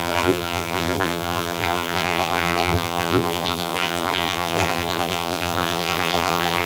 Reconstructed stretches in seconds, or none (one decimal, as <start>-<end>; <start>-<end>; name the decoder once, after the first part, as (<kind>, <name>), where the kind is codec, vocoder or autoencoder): 0.0-6.7 (vocoder, BigVGAN v2)